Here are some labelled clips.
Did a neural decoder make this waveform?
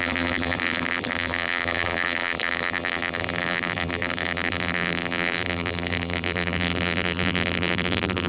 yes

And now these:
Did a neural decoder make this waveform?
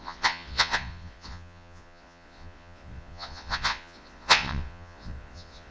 yes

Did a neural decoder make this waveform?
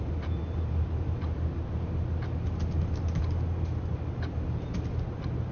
no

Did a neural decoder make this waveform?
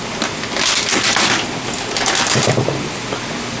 no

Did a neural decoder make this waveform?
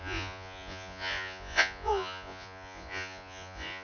yes